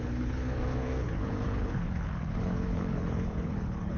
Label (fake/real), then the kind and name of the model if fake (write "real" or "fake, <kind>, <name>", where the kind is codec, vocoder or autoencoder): fake, codec, HILCodec